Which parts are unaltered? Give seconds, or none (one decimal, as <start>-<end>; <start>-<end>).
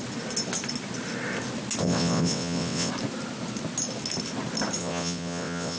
0.0-1.8; 2.9-4.8